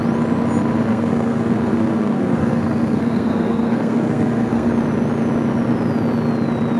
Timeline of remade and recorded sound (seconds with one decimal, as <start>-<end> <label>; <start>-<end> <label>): 0.0-0.9 recorded; 0.9-4.7 remade; 4.7-6.8 recorded